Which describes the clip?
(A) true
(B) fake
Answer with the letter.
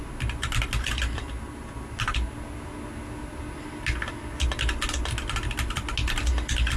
A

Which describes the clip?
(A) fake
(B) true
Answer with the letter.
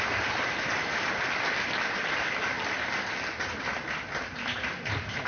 B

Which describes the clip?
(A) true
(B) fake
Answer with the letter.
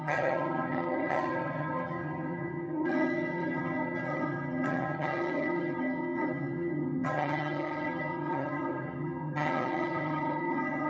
B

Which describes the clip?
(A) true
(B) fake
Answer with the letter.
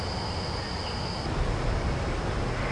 A